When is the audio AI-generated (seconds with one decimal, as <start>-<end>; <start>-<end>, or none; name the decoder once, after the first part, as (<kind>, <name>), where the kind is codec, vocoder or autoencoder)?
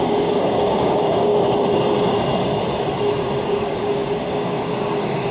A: 0.0-1.3 (codec, DAC); 3.5-5.3